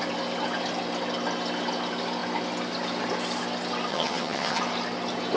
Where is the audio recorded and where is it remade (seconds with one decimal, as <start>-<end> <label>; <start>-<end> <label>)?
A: 0.0-3.9 recorded; 3.9-4.6 remade; 4.6-5.4 recorded